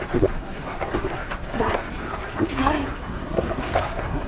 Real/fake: fake